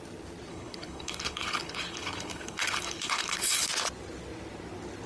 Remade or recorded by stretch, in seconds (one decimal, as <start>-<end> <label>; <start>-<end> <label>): 0.0-0.5 recorded; 0.5-3.6 remade; 3.6-5.1 recorded